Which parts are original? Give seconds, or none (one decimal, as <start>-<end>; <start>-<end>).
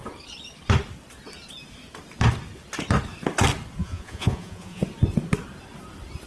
0.0-3.8; 4.8-6.3